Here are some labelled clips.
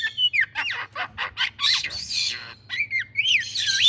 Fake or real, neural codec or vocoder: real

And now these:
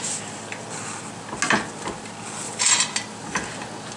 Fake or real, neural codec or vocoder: real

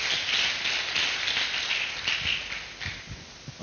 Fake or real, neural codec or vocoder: real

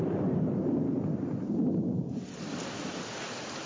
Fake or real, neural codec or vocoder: real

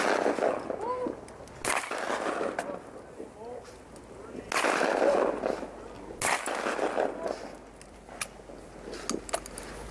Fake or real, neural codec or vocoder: real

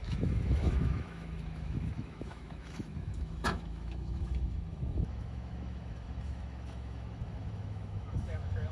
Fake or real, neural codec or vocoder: fake, autoencoder, DAC-VAE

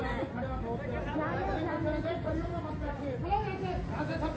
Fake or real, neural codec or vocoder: real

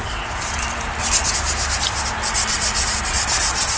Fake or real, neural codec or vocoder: real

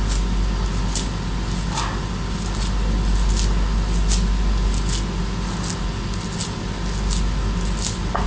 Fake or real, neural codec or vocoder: real